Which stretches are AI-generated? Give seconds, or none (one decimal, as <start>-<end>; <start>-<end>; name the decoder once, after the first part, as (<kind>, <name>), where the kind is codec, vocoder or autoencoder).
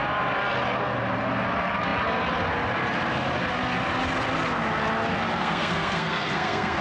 5.4-6.8 (codec, SNAC)